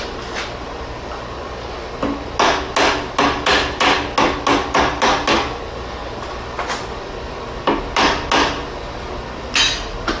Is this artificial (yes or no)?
no